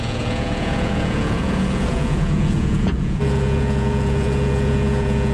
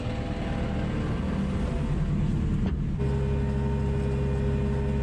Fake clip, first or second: first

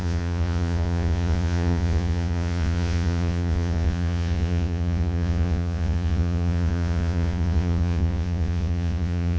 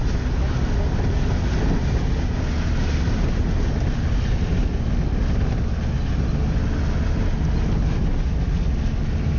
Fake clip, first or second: first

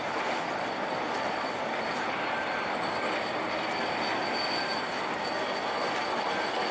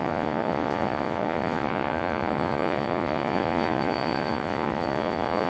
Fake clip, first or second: second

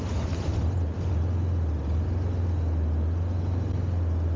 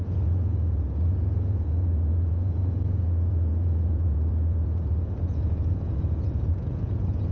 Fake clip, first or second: second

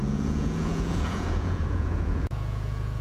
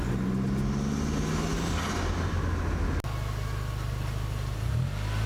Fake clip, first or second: first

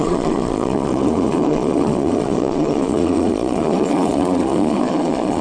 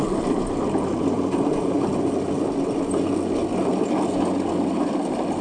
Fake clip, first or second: first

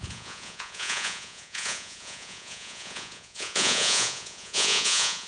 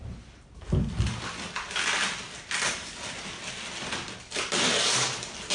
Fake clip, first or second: first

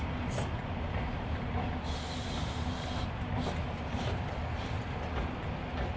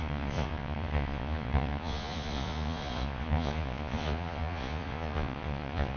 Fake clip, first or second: second